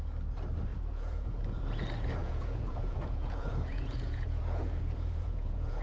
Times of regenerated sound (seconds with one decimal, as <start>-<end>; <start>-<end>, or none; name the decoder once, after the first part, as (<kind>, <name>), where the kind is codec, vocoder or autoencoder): 0.7-1.4 (vocoder, Vocos); 2.2-5.8

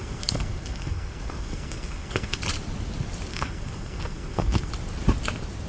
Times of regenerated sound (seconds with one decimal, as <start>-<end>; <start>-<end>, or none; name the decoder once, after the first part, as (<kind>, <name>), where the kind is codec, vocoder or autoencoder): 0.0-2.4 (codec, SNAC); 3.3-4.7